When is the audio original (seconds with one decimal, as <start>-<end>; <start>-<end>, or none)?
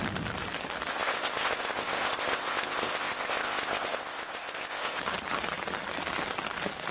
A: 0.0-0.9; 5.0-6.9